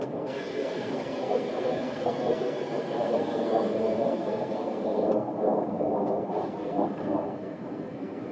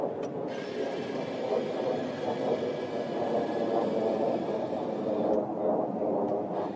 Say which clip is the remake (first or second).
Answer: first